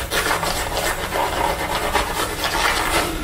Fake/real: real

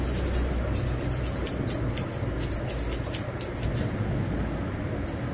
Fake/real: real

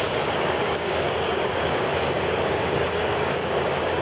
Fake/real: fake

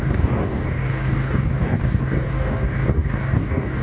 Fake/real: fake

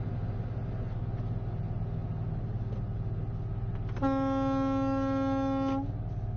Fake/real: real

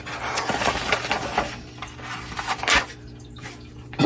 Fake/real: real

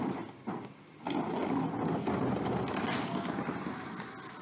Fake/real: real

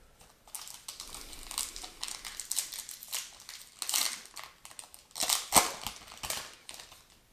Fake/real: real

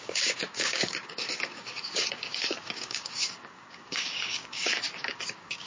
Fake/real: fake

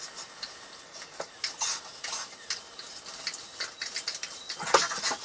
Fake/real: real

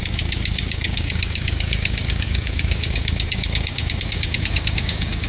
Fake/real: fake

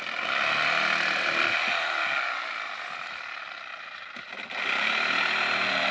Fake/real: real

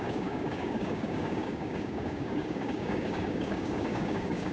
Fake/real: fake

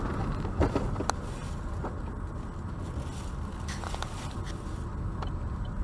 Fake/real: real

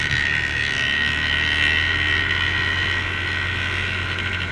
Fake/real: real